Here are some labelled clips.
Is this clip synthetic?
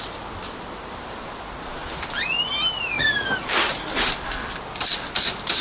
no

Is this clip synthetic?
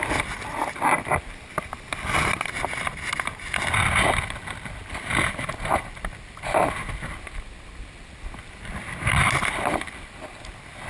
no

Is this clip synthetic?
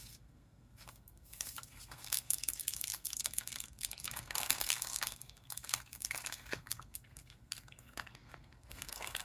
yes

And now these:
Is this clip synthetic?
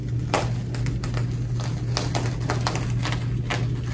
no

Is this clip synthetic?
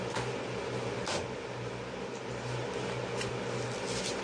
no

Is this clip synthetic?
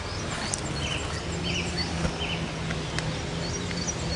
no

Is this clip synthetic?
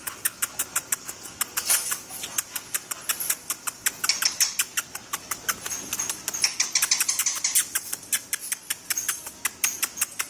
no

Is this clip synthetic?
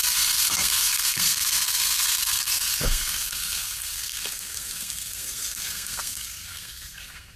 yes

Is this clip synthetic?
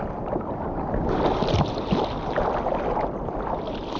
no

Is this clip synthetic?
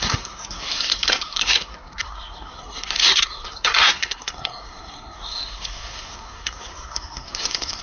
yes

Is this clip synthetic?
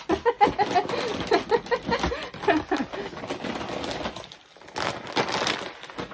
no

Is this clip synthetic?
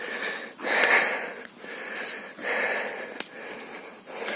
no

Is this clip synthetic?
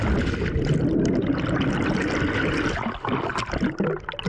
no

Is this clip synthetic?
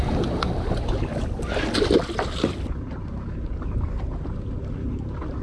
no